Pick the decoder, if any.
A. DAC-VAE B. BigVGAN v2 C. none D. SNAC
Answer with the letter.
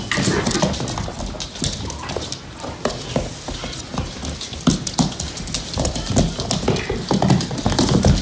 C